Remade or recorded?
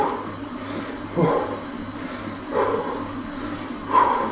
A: recorded